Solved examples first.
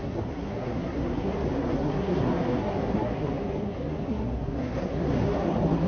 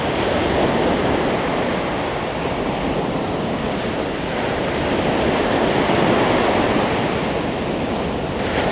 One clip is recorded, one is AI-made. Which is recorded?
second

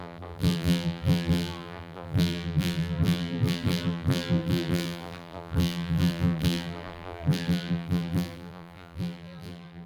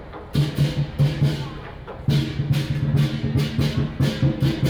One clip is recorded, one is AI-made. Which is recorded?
second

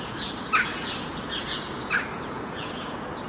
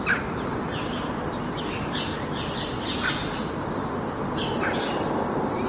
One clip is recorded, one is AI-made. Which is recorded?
second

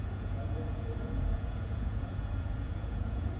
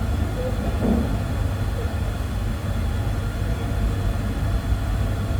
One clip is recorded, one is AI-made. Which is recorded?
second